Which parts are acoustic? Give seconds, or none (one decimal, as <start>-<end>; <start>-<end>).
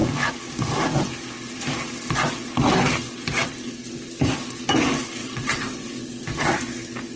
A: 0.0-5.2; 5.9-7.2